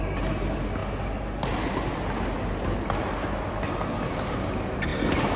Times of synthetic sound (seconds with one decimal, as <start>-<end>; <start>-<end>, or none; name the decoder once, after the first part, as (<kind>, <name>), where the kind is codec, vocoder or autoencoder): none